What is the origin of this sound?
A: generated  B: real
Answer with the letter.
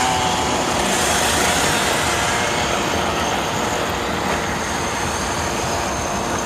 B